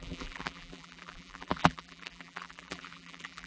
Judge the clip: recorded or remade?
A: remade